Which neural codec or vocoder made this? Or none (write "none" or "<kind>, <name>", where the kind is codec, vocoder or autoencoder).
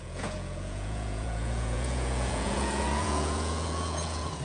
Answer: vocoder, Vocos